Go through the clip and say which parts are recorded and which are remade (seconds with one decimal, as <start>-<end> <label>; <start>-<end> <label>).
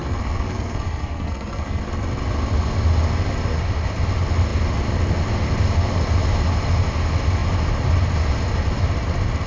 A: 0.0-1.8 remade; 1.8-9.5 recorded